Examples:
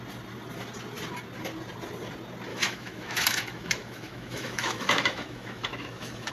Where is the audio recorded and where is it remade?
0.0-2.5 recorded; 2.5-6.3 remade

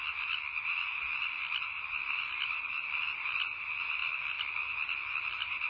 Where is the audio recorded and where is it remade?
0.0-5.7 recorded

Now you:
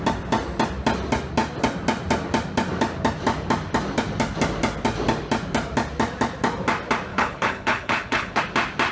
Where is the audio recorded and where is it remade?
0.0-7.1 recorded; 7.1-8.4 remade; 8.4-8.9 recorded

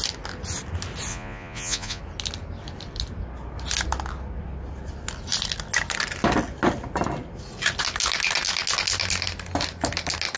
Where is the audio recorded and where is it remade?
0.0-1.1 recorded; 1.1-2.0 remade; 2.0-10.4 recorded